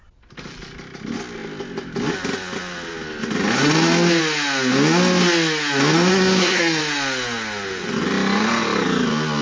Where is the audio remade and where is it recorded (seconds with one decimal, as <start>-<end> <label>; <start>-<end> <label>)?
0.0-6.1 recorded; 6.1-6.8 remade; 6.8-9.4 recorded